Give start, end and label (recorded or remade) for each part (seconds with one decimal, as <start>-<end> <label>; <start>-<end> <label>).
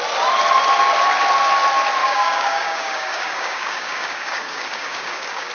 0.0-2.0 recorded; 2.0-5.5 remade